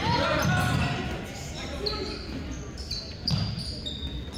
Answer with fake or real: real